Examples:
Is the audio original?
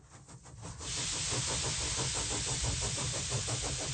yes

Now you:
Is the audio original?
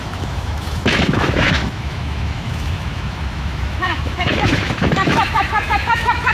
no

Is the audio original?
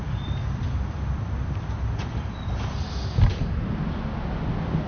yes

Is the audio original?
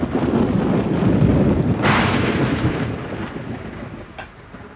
yes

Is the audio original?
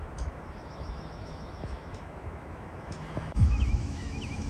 no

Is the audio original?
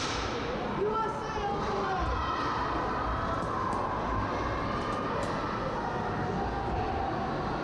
yes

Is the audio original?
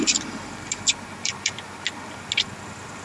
yes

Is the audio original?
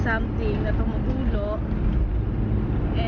yes